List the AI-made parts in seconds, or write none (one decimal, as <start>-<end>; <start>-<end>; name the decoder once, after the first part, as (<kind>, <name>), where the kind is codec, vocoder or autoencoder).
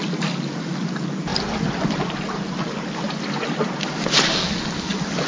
none